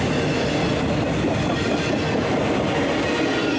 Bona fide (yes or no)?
yes